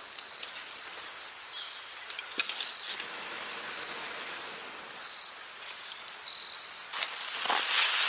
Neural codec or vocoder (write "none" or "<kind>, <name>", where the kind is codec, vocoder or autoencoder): none